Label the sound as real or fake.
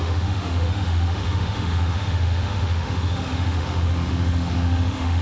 fake